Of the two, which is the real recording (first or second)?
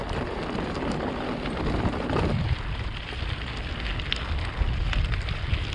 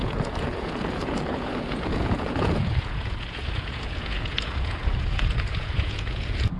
first